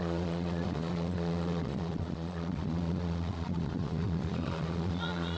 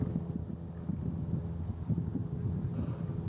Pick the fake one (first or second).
first